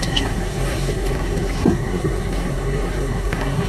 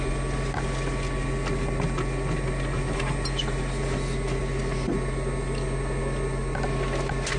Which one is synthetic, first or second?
first